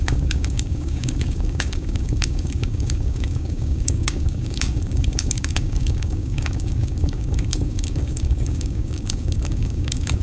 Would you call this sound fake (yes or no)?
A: yes